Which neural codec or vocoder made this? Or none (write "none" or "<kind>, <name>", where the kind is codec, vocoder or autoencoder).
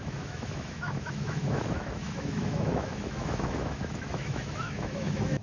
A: autoencoder, DAC-VAE